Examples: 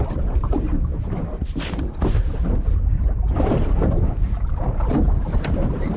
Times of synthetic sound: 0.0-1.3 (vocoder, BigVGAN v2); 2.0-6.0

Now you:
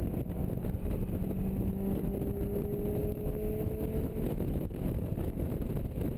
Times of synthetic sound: 3.0-5.7 (autoencoder, DAC-VAE)

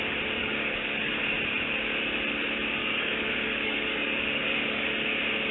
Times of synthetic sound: 0.4-1.2 (codec, DAC); 2.8-4.9

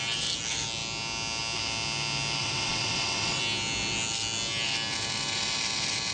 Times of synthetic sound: 2.4-3.4 (vocoder, WaveNeXt)